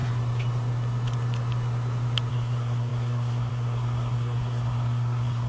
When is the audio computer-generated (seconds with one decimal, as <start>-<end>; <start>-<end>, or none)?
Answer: 2.3-5.5